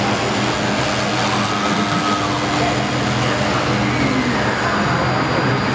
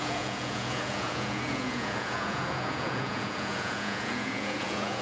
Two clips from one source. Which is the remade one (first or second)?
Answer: second